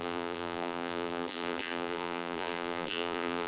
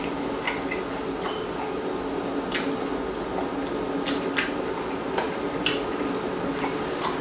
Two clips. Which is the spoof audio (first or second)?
first